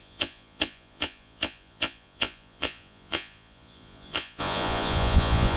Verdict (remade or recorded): remade